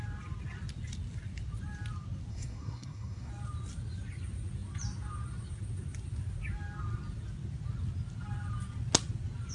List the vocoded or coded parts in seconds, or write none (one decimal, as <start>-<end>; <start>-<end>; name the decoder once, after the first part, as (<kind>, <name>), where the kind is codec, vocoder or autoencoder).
2.3-3.3 (codec, SNAC)